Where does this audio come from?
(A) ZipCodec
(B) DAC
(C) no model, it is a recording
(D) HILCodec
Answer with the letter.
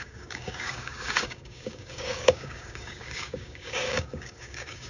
B